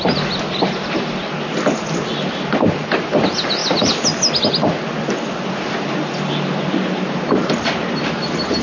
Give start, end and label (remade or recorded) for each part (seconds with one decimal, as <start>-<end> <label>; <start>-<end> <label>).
0.0-8.6 recorded